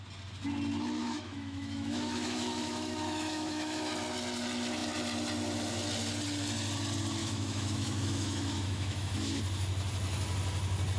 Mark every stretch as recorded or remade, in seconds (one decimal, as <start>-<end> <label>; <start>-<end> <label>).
0.0-1.0 recorded; 1.0-3.9 remade; 3.9-7.2 recorded; 7.2-9.4 remade; 9.4-11.0 recorded